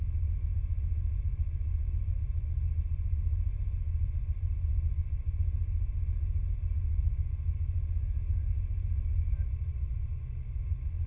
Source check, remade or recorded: recorded